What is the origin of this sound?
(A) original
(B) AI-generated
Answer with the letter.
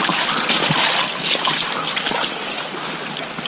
A